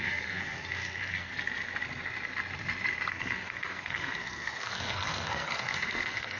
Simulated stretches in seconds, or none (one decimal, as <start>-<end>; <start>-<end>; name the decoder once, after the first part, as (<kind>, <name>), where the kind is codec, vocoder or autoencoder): 0.0-1.3 (codec, SNAC); 3.1-6.4